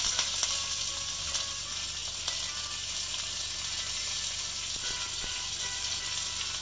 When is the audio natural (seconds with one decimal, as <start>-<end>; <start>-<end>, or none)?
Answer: 0.0-6.6